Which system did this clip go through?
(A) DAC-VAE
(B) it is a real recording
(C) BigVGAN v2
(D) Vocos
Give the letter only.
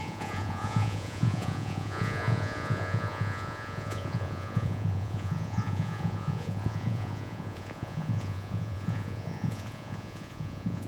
D